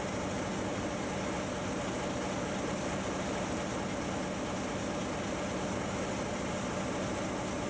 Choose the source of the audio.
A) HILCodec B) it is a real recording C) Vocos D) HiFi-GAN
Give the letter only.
B